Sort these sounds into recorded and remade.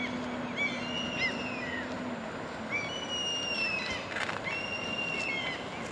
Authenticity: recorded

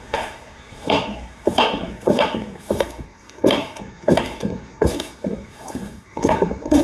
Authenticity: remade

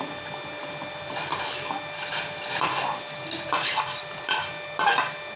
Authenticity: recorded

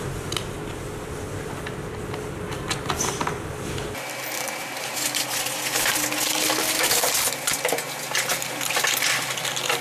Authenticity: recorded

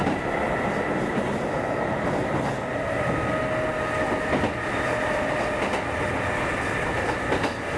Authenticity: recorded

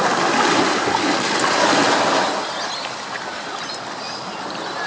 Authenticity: recorded